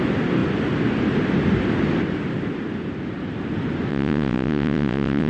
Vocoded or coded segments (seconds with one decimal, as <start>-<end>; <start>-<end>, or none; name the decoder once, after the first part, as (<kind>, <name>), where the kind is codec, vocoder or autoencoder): 3.9-5.3 (vocoder, WaveNeXt)